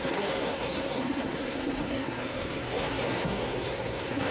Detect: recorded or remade remade